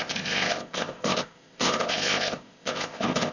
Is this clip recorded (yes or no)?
no